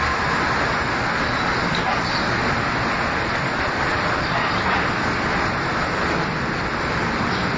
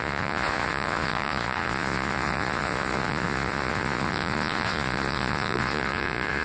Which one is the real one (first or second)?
first